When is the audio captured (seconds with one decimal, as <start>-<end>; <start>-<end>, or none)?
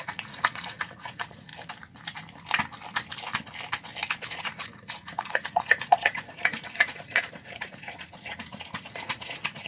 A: 1.5-4.3